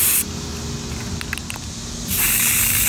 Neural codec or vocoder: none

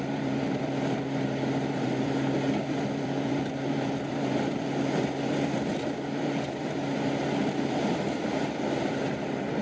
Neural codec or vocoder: vocoder, BigVGAN v2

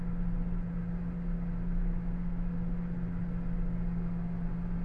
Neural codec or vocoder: none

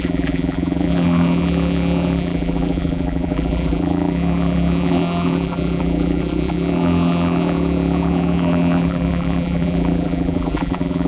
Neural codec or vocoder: vocoder, BigVGAN v2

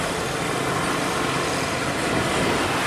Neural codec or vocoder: none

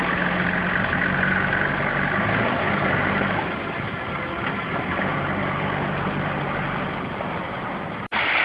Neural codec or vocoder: none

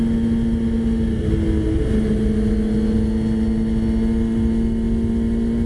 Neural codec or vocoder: none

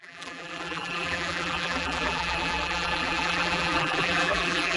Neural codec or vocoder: vocoder, BigVGAN v2